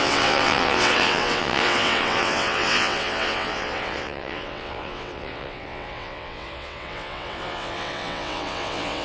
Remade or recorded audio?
remade